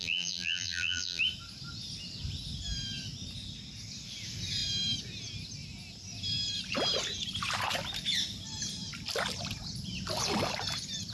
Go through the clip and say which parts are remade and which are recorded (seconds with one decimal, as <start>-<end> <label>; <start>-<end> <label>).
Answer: 0.0-1.2 remade; 1.2-11.1 recorded